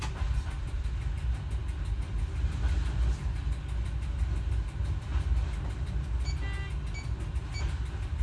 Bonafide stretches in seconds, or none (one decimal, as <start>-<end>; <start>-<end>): 0.0-8.2